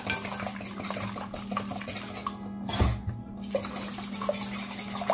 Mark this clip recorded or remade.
recorded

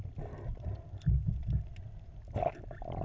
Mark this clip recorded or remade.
recorded